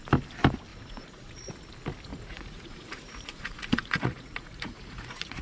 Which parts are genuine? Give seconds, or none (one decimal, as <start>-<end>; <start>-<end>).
0.0-0.7; 1.5-2.1